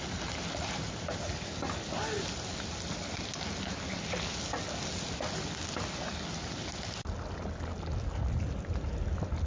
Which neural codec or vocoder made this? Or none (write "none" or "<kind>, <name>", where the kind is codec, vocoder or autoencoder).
none